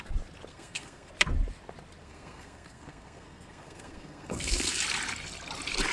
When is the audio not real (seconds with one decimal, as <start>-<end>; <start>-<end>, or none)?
0.5-1.1; 2.0-4.8